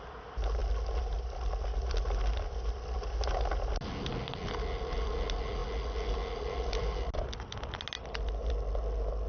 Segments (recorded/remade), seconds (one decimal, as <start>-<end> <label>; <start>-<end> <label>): 0.0-9.3 recorded